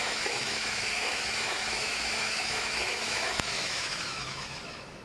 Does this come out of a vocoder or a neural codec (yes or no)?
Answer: yes